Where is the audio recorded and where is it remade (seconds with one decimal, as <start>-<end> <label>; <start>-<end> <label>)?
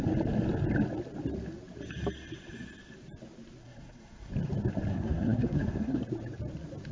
0.0-3.6 recorded; 3.6-4.3 remade; 4.3-4.9 recorded; 4.9-6.0 remade; 6.0-6.9 recorded